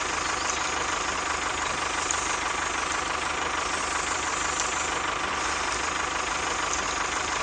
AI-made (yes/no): no